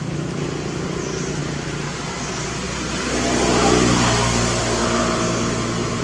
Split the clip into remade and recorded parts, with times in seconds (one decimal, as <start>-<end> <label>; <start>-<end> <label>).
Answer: 0.0-6.0 recorded